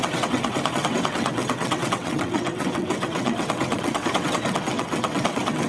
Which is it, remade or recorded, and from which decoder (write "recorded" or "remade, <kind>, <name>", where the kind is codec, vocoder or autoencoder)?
remade, vocoder, WaveNeXt